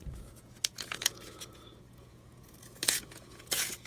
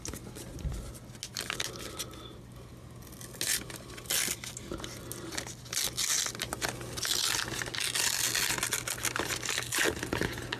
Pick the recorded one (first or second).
second